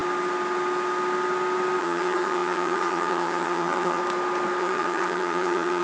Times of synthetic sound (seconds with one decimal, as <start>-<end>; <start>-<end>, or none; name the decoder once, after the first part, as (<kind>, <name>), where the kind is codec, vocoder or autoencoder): 1.8-4.0 (vocoder, HiFi-GAN); 4.6-5.8